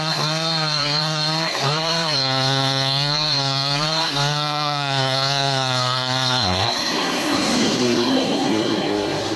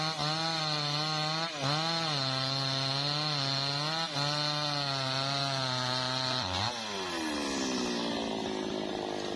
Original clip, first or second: second